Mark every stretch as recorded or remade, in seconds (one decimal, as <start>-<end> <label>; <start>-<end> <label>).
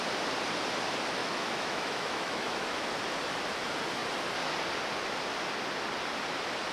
0.0-1.2 recorded; 1.2-2.9 remade; 2.9-6.7 recorded